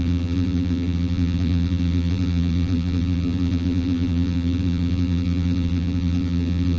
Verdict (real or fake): fake